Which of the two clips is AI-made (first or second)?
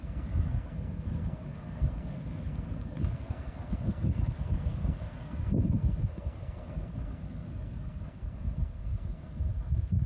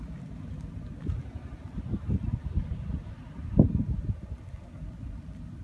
first